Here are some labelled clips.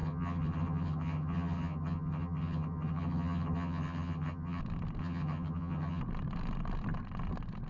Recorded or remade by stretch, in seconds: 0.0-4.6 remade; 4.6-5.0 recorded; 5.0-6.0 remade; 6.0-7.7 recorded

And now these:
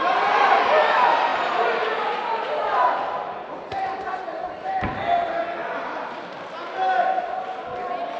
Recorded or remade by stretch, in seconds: 0.0-8.2 recorded

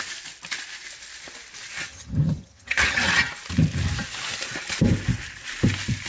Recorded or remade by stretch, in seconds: 0.0-1.9 recorded; 1.9-3.3 remade; 3.3-6.1 recorded

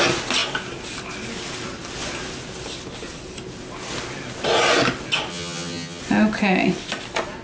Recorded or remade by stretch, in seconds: 0.0-5.3 recorded; 5.3-6.0 remade; 6.0-7.4 recorded

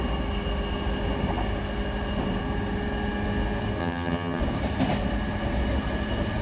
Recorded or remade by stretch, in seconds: 0.0-3.8 recorded; 3.8-4.4 remade; 4.4-6.4 recorded

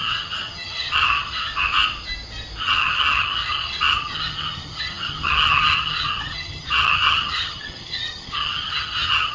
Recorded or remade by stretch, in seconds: 0.0-1.5 remade; 1.5-2.6 recorded; 2.6-9.3 remade

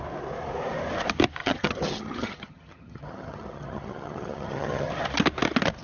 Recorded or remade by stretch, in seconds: 0.0-1.4 recorded; 1.4-4.9 remade; 4.9-5.8 recorded